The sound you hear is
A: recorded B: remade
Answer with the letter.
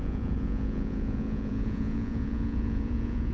B